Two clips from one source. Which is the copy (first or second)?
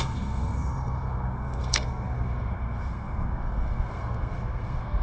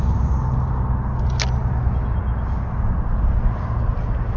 first